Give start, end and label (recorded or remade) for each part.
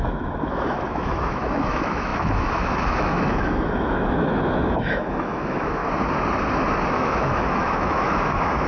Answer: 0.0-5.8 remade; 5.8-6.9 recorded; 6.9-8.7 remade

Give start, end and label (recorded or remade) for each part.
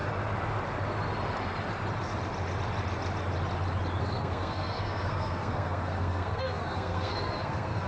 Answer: 0.0-4.0 recorded; 4.0-7.9 remade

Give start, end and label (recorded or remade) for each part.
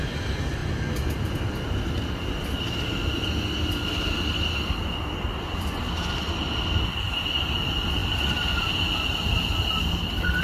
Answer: 0.0-10.4 recorded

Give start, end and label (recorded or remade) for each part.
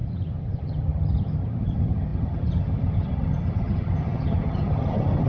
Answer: 0.0-5.3 remade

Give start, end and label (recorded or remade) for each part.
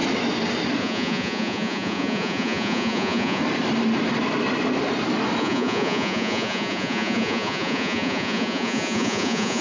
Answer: 0.0-0.8 recorded; 0.8-3.4 remade; 3.4-5.4 recorded; 5.4-9.6 remade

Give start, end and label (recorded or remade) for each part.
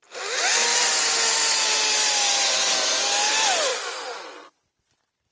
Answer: 0.0-5.3 recorded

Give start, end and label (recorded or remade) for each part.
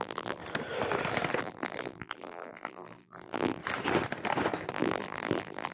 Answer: 0.0-0.4 remade; 0.4-1.4 recorded; 1.4-3.6 remade; 3.6-4.7 recorded; 4.7-5.7 remade